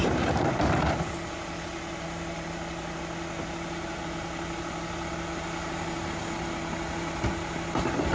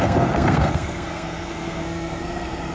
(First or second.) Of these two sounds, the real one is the first